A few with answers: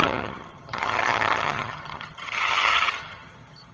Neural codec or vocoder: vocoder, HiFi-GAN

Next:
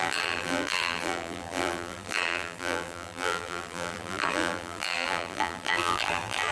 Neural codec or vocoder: vocoder, BigVGAN v2